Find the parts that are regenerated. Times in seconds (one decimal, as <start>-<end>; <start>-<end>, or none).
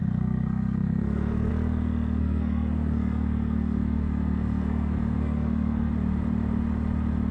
0.0-1.5; 2.2-5.9